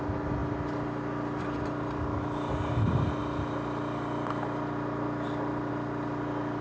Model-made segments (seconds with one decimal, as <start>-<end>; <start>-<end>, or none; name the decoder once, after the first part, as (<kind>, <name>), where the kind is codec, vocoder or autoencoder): 0.4-1.4 (vocoder, BigVGAN v2); 3.2-5.7